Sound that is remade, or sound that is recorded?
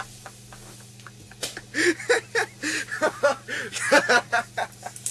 recorded